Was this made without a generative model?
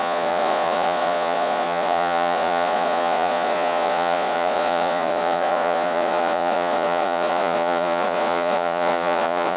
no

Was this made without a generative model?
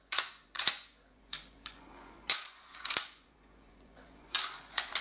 no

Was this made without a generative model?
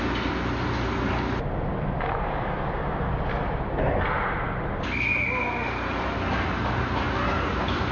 yes